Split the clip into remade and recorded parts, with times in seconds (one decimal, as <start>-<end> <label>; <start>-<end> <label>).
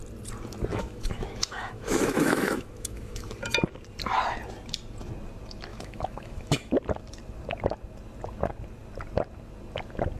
0.0-0.7 recorded; 0.7-3.3 remade; 3.3-5.7 recorded; 5.7-6.7 remade; 6.7-10.2 recorded